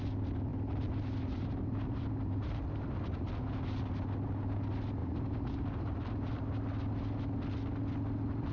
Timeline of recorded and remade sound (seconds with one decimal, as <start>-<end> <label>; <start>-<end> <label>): 0.0-0.5 recorded; 0.5-3.3 remade; 3.3-5.0 recorded; 5.0-6.1 remade; 6.1-8.5 recorded